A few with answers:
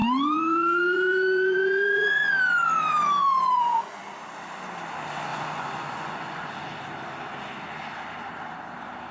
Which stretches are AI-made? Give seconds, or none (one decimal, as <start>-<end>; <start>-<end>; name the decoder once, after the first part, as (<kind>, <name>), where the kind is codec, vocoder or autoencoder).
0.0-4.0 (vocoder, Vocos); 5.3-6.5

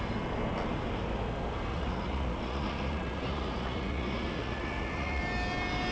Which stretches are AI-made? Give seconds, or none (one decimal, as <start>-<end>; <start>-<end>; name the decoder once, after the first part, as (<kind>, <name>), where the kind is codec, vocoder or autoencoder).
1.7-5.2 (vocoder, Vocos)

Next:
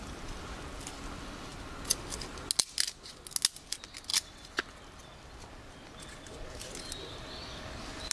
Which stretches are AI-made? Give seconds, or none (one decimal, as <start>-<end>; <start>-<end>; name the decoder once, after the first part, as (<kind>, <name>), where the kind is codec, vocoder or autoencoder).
none